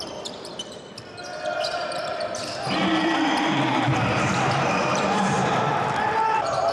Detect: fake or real fake